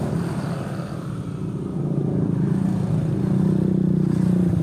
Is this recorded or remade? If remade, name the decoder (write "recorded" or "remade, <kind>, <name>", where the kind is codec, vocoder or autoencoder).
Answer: recorded